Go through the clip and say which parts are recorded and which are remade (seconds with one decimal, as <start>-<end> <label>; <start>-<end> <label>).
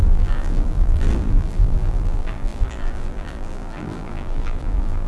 0.0-5.1 remade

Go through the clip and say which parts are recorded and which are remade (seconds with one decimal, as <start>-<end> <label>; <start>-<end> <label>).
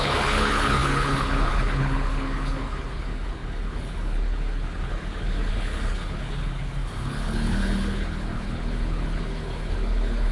0.0-10.3 remade